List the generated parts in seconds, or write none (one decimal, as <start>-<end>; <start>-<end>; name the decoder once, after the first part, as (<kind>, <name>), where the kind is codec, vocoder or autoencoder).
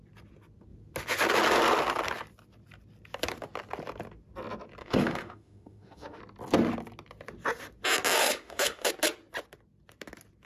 4.8-6.2 (autoencoder, DAC-VAE); 8.2-8.9